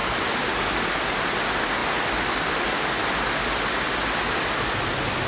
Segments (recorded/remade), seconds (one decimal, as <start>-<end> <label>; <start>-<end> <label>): 0.0-5.3 recorded